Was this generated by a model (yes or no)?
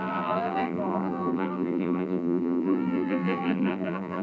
yes